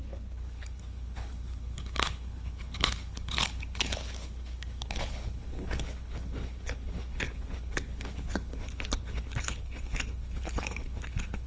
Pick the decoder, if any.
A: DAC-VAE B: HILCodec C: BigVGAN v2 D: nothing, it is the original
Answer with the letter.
B